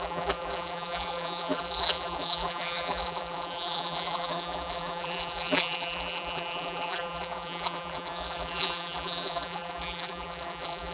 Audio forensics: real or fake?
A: fake